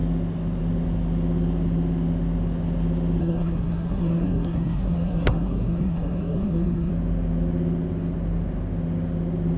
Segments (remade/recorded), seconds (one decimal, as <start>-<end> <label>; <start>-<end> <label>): 0.0-3.2 recorded; 3.2-6.9 remade; 6.9-9.6 recorded